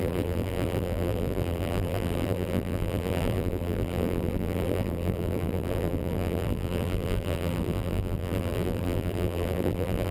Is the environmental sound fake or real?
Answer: fake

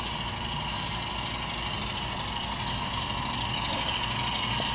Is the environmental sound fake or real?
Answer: real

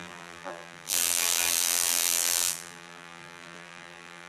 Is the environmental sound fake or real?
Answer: fake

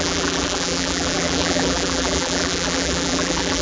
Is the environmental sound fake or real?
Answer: fake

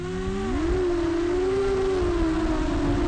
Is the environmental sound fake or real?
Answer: real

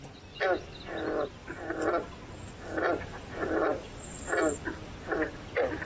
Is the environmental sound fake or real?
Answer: real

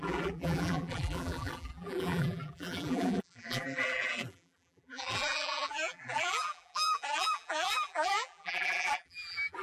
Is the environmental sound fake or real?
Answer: fake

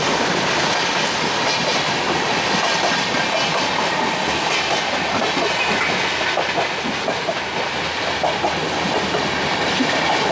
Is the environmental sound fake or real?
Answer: real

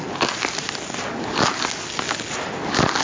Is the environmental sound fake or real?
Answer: real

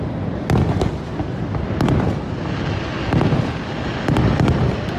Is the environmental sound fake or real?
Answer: real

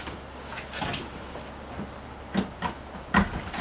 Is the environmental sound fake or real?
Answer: real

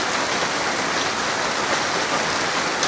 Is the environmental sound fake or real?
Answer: real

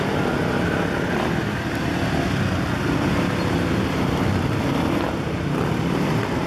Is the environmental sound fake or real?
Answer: real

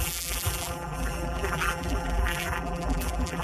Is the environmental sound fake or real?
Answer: fake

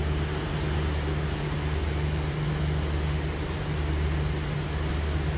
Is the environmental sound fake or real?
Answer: real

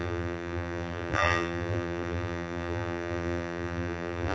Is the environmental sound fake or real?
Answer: fake